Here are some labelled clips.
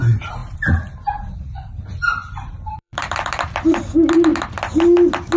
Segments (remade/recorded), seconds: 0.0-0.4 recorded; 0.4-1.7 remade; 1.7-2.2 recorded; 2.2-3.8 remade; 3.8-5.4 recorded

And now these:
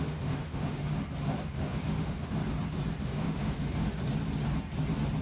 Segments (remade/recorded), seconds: 0.0-0.9 remade; 0.9-1.5 recorded; 1.5-2.4 remade; 2.4-3.0 recorded; 3.0-4.0 remade; 4.0-5.2 recorded

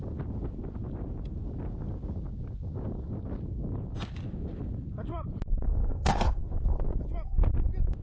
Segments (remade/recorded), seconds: 0.0-5.8 recorded; 5.8-6.4 remade; 6.4-8.0 recorded

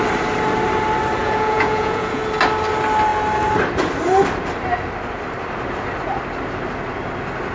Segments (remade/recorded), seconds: 0.0-1.2 recorded; 1.2-2.2 remade; 2.2-7.5 recorded

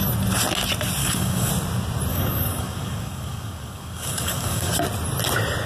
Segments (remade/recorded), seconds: 0.0-1.0 recorded; 1.0-1.5 remade; 1.5-2.1 recorded; 2.1-4.7 remade; 4.7-5.7 recorded

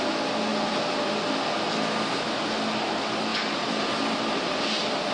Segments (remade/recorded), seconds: 0.0-0.5 recorded; 0.5-1.1 remade; 1.1-3.3 recorded; 3.3-5.1 remade

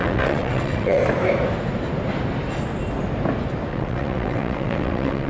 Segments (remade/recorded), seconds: 0.0-1.0 remade; 1.0-3.7 recorded; 3.7-5.3 remade

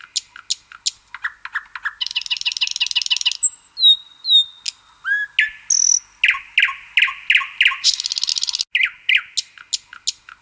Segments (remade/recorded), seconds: 0.0-10.4 recorded